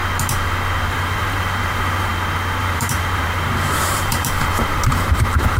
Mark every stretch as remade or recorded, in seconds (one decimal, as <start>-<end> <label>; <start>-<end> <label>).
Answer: 0.0-0.9 recorded; 0.9-2.1 remade; 2.1-2.6 recorded; 2.6-5.6 remade